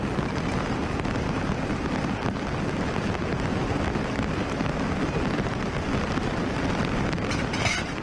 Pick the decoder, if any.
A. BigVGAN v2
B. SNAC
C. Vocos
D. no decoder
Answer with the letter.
D